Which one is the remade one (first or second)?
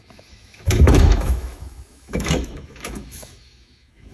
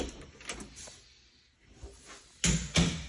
first